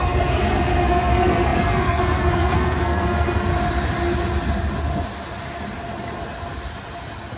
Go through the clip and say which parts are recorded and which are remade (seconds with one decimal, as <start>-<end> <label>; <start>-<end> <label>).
0.0-3.5 remade; 3.5-7.4 recorded